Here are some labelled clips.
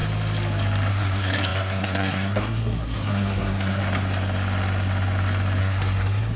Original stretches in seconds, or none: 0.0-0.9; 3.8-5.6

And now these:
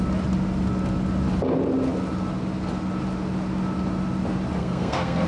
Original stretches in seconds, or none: 0.0-4.6

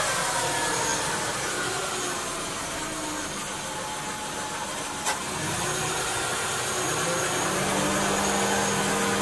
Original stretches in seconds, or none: 0.0-9.2

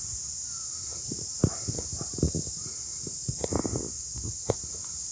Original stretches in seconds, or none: 0.0-5.1

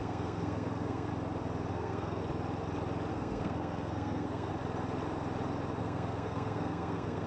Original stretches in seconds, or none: 1.1-1.7; 2.2-3.1; 4.5-5.8

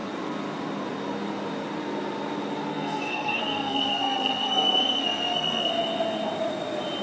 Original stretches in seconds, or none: 0.0-2.7; 5.7-7.0

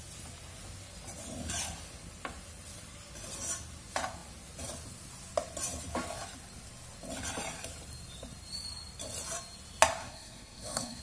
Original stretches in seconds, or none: 0.0-10.0